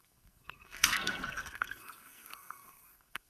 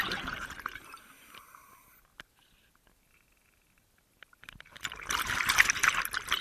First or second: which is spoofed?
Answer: first